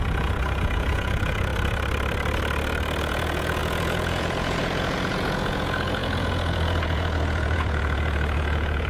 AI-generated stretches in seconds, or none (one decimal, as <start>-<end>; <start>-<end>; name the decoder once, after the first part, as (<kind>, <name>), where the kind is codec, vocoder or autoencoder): 0.0-1.5 (vocoder, Vocos); 3.0-8.9